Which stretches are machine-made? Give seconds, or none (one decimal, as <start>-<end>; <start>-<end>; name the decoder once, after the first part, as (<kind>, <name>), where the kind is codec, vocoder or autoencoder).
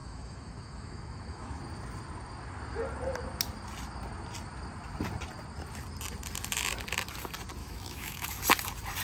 0.0-1.6 (autoencoder, DAC-VAE); 7.6-8.4